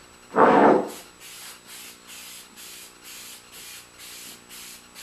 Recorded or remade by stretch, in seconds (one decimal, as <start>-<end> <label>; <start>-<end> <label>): 0.0-5.0 recorded